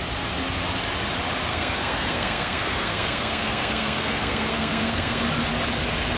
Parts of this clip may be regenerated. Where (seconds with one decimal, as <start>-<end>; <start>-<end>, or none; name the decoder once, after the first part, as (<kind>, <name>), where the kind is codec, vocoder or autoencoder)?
1.5-5.2 (codec, SNAC)